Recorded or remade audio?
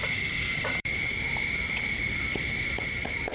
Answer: remade